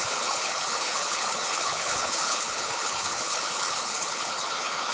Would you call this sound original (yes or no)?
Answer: no